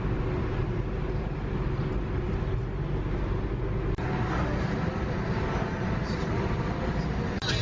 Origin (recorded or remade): recorded